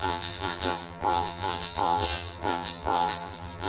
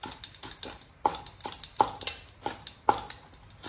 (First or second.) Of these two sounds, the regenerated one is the first